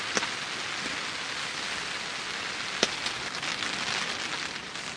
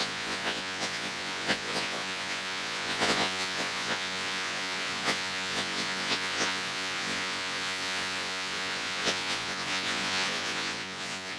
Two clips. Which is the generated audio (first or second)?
second